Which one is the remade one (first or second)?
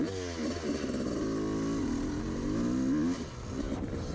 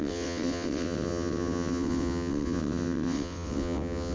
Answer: second